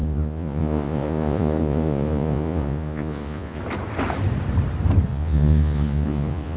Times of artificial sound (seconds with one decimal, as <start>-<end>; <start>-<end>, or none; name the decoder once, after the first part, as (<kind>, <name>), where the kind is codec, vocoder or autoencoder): 0.0-3.6 (vocoder, Vocos); 5.1-6.6